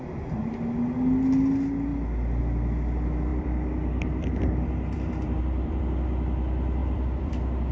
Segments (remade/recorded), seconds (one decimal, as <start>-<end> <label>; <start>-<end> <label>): 0.0-3.3 recorded; 3.3-5.8 remade; 5.8-6.8 recorded; 6.8-7.3 remade; 7.3-7.7 recorded